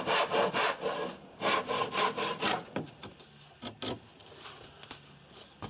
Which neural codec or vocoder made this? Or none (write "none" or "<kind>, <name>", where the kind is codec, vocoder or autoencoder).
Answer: none